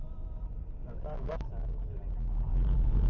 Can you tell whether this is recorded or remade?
recorded